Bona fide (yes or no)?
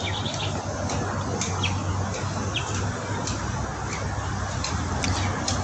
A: yes